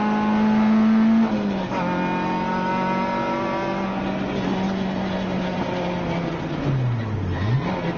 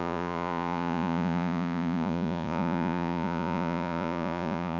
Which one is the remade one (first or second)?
second